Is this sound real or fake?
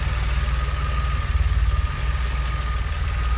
real